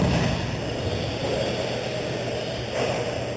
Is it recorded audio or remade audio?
recorded